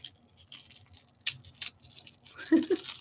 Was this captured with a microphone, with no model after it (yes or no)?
yes